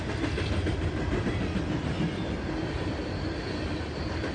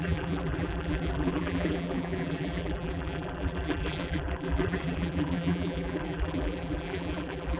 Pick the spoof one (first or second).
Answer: second